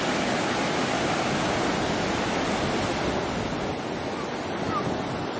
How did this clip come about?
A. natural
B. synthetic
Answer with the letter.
A